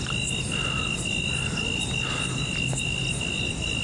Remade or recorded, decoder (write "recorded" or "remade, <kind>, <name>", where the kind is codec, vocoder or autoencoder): recorded